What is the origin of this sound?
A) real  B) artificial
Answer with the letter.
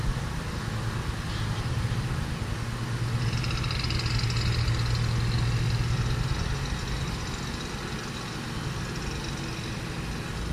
A